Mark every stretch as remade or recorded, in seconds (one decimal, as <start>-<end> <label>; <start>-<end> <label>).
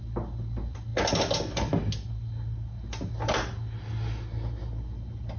0.0-5.4 recorded